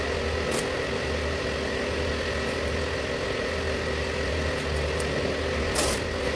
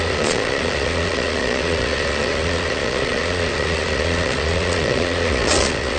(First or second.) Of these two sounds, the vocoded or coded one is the second